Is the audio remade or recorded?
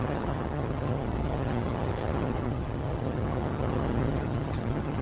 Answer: remade